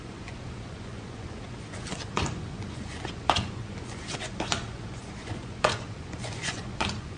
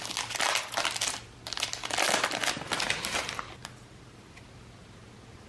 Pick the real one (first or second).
second